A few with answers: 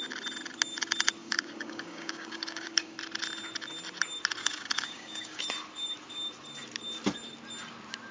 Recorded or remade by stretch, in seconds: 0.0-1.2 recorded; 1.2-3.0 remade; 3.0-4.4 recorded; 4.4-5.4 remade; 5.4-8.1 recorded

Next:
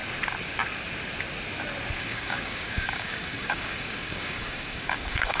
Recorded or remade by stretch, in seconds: 0.0-2.0 recorded; 2.0-5.4 remade